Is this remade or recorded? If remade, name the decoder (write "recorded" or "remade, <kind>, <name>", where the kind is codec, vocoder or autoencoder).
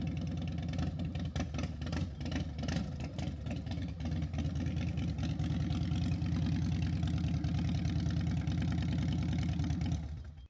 recorded